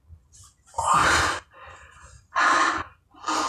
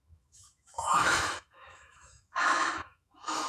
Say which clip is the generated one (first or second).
second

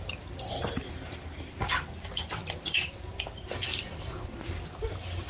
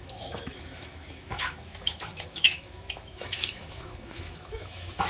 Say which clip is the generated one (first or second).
second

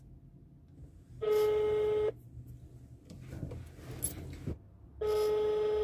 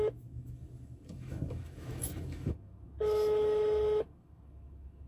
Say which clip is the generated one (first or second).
second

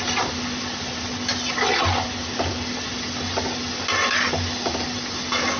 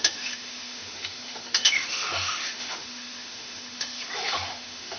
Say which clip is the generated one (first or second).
second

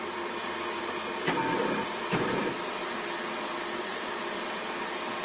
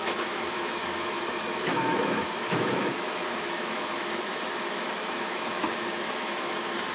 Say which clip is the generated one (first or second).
second